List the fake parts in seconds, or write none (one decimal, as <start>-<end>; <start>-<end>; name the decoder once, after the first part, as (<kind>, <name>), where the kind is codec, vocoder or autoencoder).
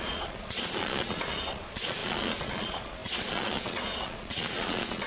0.0-5.1 (vocoder, Vocos)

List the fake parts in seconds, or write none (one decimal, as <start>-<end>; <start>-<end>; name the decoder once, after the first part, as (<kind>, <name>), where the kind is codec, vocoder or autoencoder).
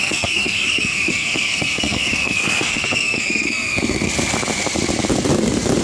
0.0-4.1 (codec, SNAC)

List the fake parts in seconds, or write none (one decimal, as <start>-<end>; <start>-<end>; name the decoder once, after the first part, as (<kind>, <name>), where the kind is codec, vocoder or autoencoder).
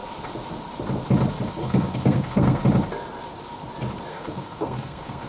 1.6-2.6 (codec, SNAC); 4.1-5.3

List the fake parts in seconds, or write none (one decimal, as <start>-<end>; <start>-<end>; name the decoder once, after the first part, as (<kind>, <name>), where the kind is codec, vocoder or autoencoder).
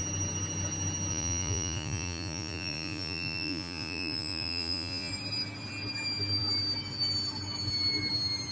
1.1-5.1 (vocoder, Vocos)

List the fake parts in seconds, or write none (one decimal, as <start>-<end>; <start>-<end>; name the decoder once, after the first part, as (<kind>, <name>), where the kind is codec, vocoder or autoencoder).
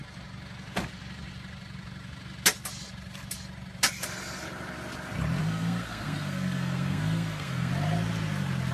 5.4-7.7 (codec, SNAC)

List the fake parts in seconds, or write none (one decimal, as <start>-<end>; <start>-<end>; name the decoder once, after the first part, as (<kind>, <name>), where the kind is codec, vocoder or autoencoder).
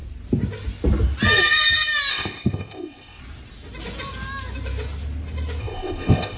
2.1-3.2 (codec, ZipCodec); 5.6-6.4